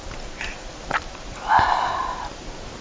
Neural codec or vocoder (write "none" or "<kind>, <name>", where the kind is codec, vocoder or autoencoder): none